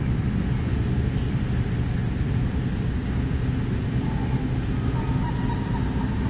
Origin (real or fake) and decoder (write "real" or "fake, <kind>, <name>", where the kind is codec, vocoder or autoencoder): real